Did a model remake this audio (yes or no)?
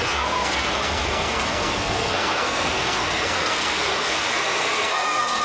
yes